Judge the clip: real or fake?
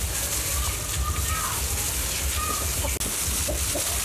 real